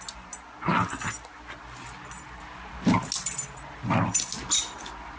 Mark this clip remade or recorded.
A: recorded